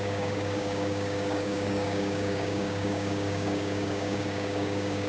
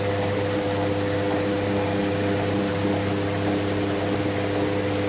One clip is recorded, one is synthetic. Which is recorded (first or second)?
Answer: second